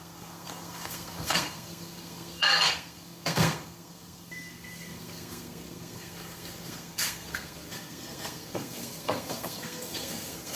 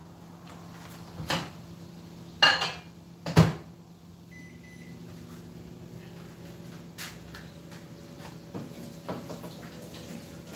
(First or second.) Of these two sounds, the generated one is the first